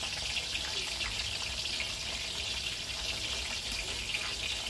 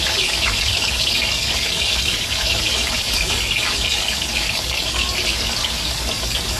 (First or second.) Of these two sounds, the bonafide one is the first